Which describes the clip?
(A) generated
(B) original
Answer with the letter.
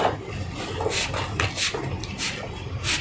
B